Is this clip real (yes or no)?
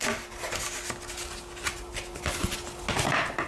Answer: yes